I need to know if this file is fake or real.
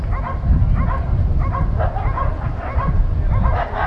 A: real